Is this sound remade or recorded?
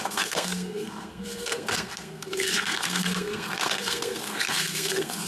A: remade